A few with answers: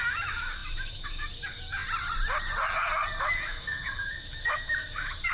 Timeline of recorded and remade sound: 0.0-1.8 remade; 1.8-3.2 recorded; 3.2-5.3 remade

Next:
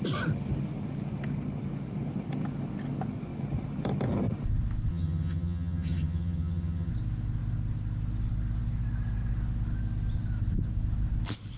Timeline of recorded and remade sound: 0.0-4.9 recorded; 4.9-6.9 remade; 6.9-11.6 recorded

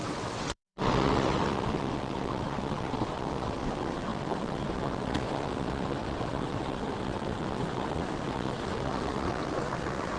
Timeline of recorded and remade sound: 0.0-10.2 remade

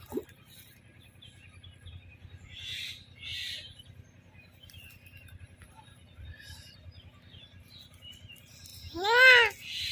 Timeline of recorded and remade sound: 0.0-9.9 recorded